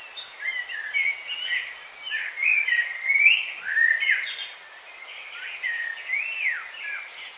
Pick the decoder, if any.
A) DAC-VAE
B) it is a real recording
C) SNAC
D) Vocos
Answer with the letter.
B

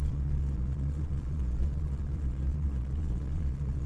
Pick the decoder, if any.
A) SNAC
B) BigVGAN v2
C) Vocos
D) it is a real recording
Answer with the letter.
C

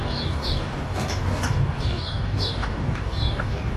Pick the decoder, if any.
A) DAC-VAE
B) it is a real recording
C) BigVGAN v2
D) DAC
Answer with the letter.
D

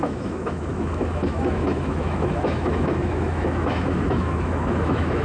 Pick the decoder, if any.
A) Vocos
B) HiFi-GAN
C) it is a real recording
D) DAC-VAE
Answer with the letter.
D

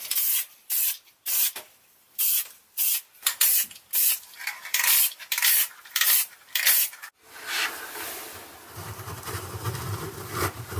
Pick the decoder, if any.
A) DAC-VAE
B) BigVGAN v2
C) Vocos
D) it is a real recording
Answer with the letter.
B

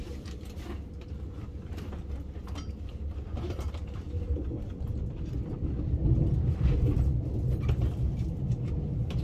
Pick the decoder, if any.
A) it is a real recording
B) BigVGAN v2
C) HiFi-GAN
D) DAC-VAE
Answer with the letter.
A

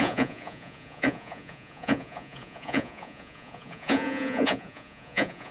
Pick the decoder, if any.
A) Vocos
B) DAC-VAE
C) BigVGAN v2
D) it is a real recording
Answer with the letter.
A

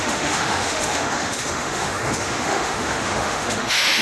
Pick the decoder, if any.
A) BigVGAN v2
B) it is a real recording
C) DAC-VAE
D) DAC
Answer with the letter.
C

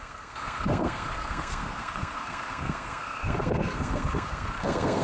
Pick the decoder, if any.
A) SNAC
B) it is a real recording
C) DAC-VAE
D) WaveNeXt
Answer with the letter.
A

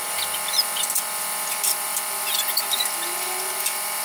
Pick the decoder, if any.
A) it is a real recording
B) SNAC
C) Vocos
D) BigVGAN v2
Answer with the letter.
D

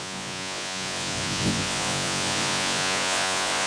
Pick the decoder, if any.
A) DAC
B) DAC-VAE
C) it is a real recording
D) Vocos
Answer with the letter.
D